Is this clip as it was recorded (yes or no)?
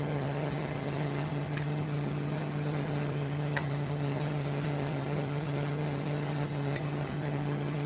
no